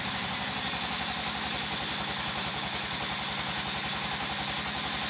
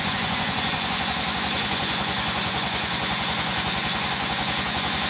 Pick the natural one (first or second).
first